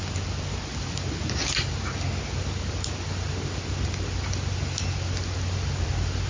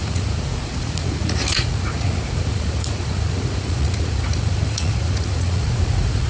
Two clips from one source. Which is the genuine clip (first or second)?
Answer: first